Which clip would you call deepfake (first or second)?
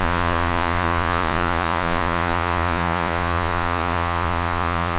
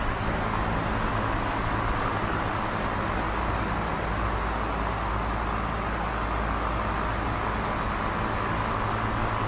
first